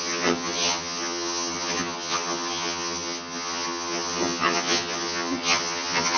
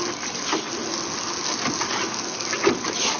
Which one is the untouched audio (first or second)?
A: second